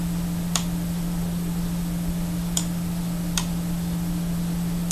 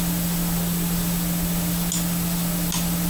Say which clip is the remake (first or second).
first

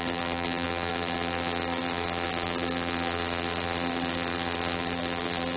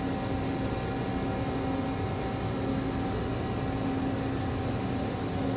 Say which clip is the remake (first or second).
first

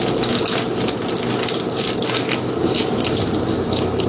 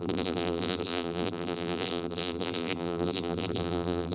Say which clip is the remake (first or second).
second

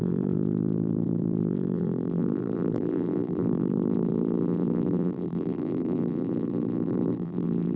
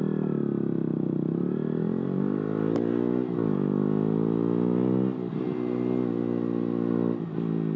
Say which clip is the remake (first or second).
first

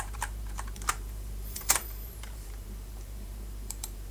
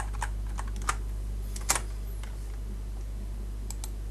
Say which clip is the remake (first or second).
first